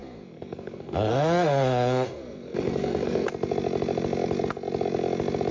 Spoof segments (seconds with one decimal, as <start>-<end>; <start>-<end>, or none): 0.0-3.3